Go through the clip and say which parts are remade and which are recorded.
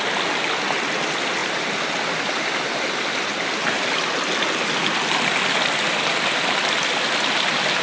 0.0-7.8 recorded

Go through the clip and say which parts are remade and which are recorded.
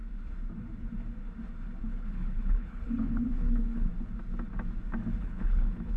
0.0-1.8 recorded; 1.8-3.9 remade; 3.9-5.2 recorded; 5.2-6.0 remade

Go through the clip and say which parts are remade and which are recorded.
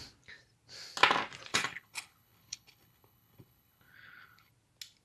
0.0-1.5 recorded; 1.5-4.5 remade; 4.5-5.0 recorded